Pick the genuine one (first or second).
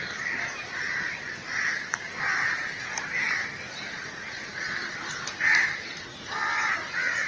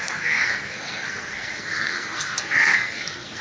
first